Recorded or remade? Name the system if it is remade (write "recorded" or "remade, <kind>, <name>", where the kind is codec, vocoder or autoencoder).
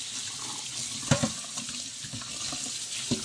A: recorded